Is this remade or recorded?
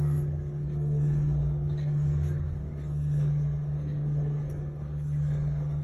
remade